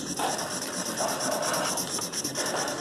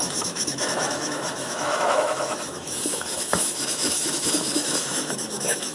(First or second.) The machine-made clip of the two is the second